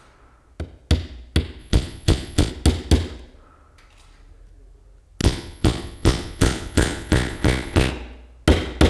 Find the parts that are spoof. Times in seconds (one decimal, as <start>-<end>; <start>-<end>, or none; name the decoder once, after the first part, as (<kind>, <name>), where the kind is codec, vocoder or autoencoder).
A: 1.6-2.5 (vocoder, Vocos); 5.2-7.9